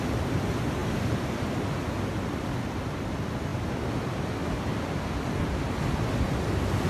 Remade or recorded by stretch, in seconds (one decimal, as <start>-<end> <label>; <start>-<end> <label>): 0.0-6.9 recorded